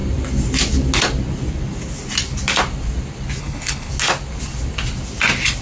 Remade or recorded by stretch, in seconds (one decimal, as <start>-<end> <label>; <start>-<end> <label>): 0.0-3.4 recorded; 3.4-3.9 remade; 3.9-5.6 recorded